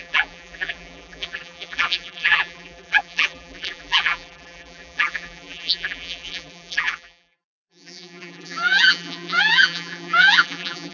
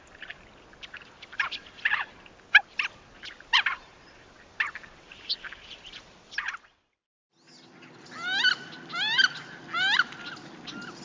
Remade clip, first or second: first